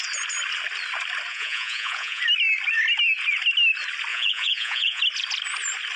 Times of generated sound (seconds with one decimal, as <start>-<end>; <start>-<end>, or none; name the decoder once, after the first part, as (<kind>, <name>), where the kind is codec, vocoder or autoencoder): 1.3-2.2 (vocoder, Vocos); 4.1-5.0